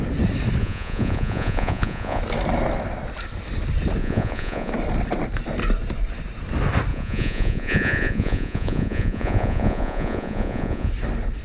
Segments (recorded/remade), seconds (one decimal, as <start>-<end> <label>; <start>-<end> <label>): 0.0-0.6 recorded; 0.6-2.2 remade; 2.2-4.0 recorded; 4.0-4.7 remade; 4.7-6.9 recorded; 6.9-10.9 remade; 10.9-11.4 recorded